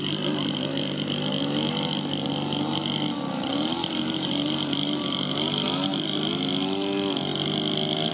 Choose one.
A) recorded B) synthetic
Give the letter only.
A